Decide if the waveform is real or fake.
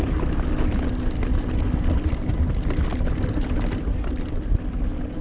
real